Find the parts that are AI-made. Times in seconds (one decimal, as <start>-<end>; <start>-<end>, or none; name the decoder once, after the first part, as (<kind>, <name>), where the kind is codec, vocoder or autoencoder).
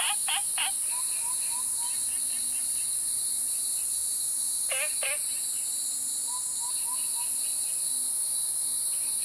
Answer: none